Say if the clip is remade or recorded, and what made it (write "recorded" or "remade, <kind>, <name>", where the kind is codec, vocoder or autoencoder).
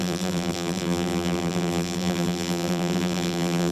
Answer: remade, vocoder, BigVGAN v2